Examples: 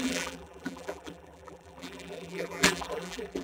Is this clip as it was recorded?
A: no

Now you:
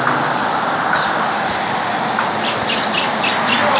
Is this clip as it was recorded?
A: yes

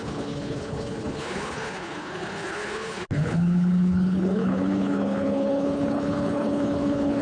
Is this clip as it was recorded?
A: no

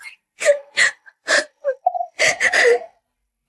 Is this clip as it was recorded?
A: no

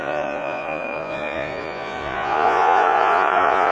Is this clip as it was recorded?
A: no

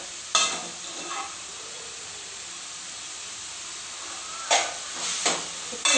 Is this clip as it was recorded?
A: yes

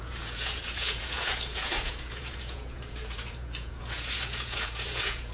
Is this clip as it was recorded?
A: no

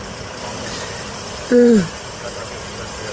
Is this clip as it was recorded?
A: no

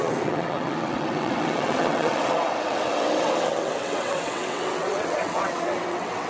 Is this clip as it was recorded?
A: no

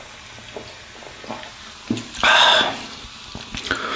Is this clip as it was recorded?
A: yes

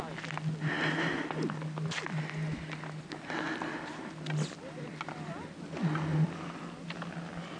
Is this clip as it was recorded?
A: yes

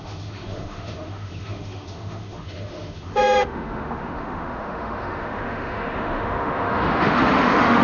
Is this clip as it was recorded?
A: no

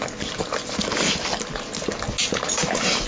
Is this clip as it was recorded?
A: yes